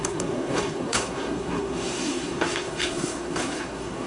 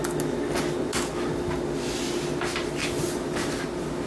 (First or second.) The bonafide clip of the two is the second